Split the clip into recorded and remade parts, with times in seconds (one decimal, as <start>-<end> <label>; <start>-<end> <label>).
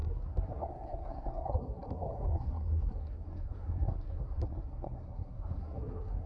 0.0-6.3 remade